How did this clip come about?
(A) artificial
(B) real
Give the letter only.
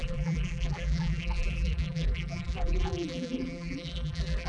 A